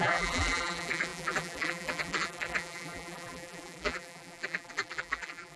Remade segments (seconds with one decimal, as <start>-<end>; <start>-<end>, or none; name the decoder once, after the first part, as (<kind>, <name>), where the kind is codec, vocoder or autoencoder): 0.0-5.6 (vocoder, BigVGAN v2)